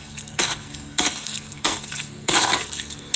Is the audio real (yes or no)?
no